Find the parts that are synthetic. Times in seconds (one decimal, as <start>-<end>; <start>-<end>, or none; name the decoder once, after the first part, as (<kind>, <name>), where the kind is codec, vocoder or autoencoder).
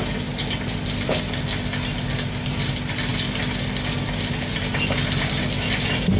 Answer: none